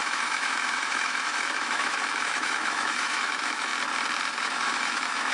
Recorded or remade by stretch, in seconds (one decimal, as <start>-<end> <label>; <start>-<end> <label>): 0.0-3.7 remade; 3.7-4.3 recorded; 4.3-5.3 remade